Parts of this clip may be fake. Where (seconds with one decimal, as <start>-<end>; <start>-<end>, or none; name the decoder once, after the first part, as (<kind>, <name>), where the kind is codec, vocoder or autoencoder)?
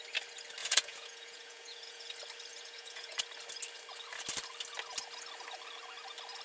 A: 0.6-2.1 (vocoder, Vocos); 2.5-3.2